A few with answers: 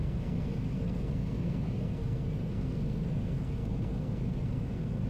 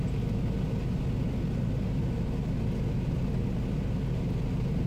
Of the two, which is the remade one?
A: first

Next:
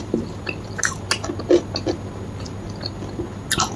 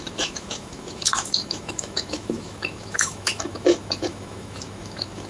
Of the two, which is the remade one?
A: second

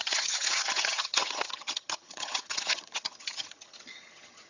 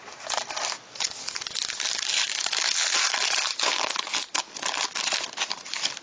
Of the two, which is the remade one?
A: first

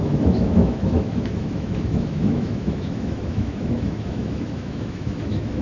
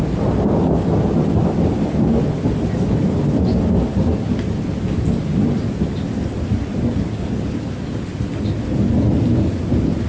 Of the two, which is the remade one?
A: first